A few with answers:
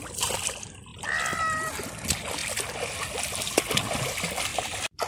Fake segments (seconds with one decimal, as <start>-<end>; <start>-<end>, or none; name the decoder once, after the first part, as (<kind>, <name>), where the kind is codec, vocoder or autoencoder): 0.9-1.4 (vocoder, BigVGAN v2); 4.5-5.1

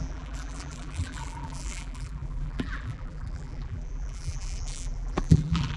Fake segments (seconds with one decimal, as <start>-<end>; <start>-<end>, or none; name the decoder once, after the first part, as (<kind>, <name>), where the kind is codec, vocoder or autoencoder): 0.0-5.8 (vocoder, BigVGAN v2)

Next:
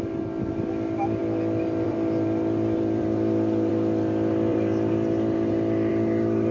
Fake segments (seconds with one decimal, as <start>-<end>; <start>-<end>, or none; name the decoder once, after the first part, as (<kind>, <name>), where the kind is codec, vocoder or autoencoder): 1.2-3.7 (vocoder, BigVGAN v2); 4.5-5.9